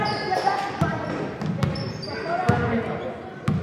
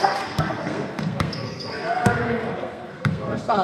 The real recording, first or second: first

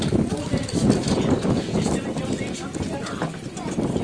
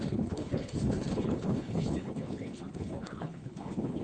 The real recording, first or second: first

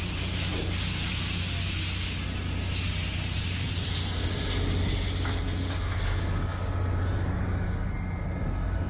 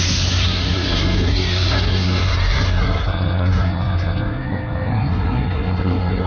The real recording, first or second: first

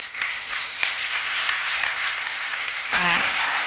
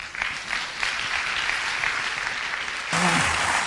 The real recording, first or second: second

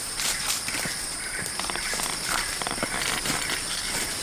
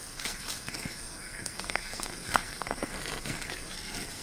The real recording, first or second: first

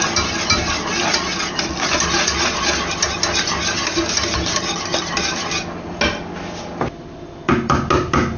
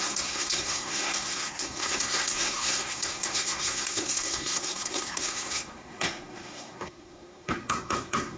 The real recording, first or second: first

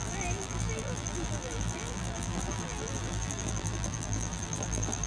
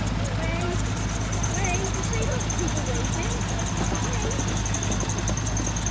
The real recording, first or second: second